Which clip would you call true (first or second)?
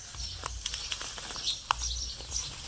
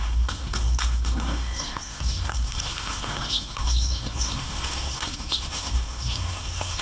first